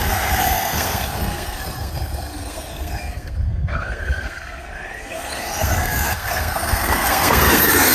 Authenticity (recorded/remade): remade